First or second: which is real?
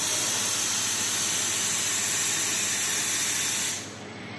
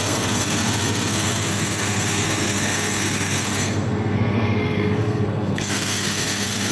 first